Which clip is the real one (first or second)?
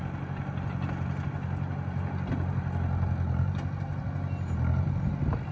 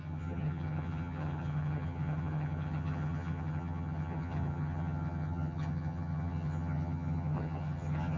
first